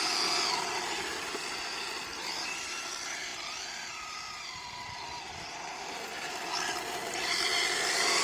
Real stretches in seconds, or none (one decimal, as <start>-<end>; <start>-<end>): 0.0-8.2